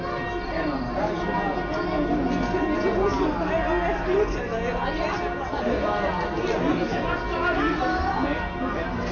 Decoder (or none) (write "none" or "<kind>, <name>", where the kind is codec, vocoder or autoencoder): none